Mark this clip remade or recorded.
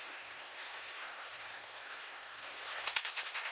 remade